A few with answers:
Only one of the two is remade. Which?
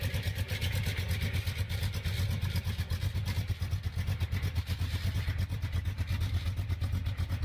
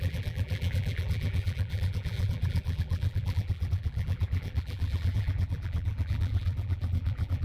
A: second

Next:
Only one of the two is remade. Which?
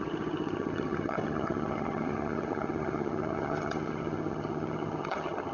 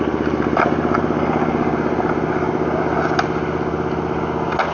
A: first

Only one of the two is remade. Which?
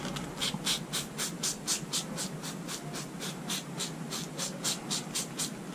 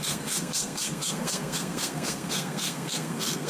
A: second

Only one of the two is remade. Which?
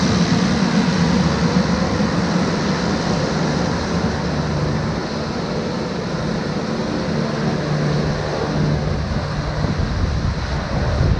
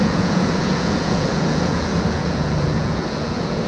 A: second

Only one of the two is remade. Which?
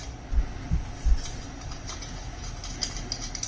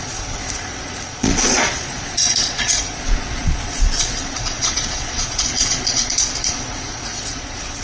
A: second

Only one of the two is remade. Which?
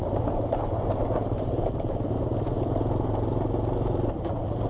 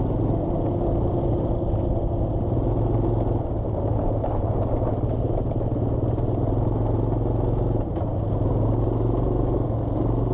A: first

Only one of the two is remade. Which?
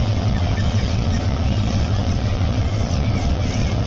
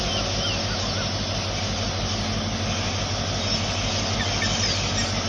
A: first